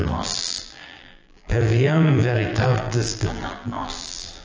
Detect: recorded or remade remade